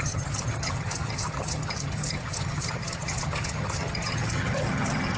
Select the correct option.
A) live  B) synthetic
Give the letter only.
B